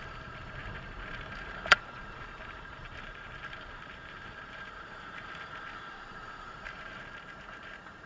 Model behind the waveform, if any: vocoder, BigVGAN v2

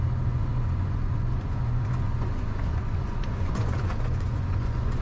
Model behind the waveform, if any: vocoder, Vocos